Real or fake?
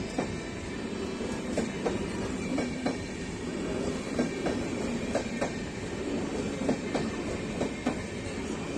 real